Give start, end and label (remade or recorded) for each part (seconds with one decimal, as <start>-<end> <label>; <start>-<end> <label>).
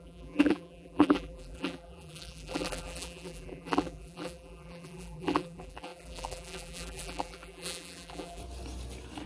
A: 0.0-8.4 remade; 8.4-9.3 recorded